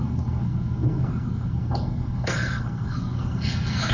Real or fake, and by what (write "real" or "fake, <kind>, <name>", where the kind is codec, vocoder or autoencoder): fake, codec, SNAC